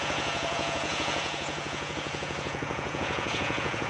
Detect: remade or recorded remade